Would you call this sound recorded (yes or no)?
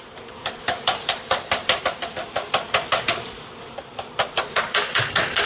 yes